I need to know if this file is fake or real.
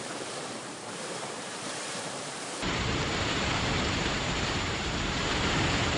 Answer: fake